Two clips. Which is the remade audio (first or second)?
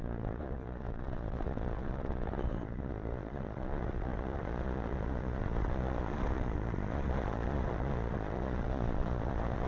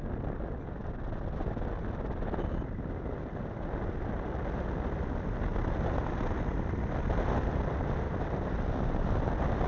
first